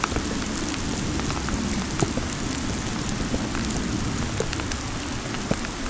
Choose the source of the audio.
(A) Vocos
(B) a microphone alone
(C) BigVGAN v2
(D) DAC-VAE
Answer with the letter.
B